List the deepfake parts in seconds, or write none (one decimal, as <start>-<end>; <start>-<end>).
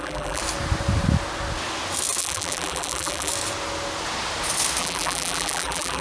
0.0-0.4; 2.2-3.3; 4.8-6.0